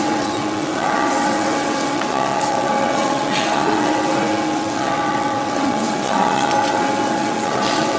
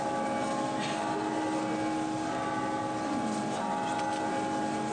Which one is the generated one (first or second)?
first